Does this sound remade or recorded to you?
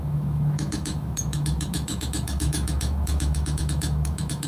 remade